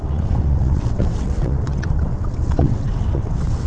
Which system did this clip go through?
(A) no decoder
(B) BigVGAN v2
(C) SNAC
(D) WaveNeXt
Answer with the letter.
D